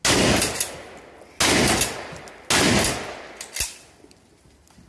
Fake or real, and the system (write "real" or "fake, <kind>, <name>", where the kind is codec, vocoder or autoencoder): real